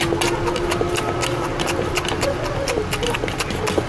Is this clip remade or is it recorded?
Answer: recorded